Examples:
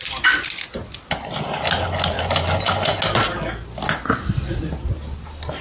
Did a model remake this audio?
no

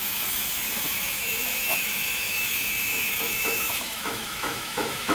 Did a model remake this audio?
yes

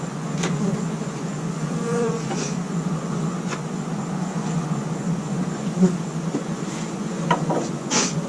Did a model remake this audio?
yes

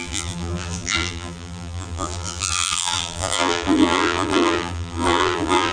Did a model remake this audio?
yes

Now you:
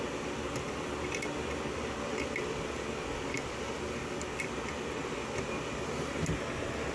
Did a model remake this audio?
no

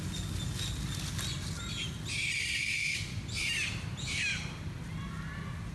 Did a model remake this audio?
no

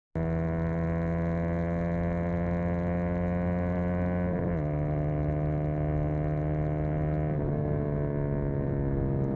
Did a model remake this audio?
no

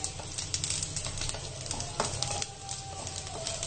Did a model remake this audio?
no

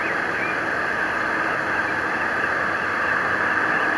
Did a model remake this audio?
no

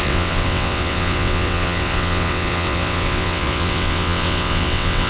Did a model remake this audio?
yes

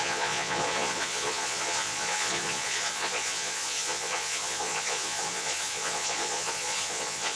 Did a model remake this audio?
yes